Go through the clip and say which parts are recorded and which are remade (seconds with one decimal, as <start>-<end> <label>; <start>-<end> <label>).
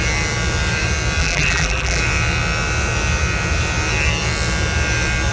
0.0-1.2 recorded; 1.2-2.0 remade; 2.0-5.3 recorded